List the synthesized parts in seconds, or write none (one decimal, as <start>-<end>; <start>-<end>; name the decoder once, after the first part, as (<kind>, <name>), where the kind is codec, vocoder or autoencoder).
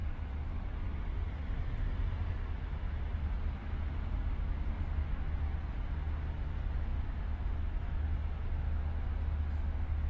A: 0.0-2.3 (vocoder, BigVGAN v2)